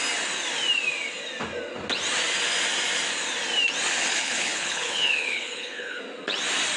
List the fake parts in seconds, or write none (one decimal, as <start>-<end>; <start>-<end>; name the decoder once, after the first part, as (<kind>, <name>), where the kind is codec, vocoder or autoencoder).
4.0-6.0 (codec, HILCodec)